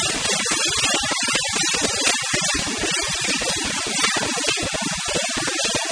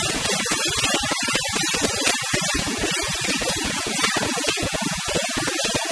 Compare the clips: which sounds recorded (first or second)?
first